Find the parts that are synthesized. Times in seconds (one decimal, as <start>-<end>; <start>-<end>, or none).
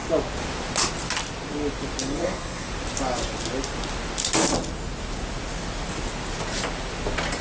2.0-2.7